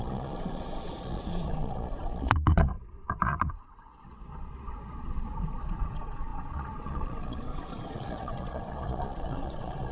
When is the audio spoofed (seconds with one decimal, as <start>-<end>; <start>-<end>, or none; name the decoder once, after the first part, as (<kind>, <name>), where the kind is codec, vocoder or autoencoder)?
0.0-9.9 (vocoder, Vocos)